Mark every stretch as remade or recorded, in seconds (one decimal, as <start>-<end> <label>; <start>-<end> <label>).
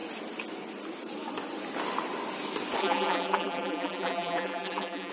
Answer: 0.0-2.8 recorded; 2.8-5.1 remade